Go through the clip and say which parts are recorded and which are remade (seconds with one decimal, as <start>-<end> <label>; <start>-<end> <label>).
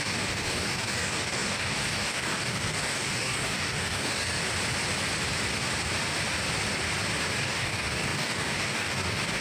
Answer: 0.0-4.4 remade; 4.4-7.4 recorded; 7.4-9.4 remade